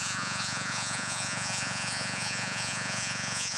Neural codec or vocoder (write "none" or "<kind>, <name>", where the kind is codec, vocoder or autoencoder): vocoder, Vocos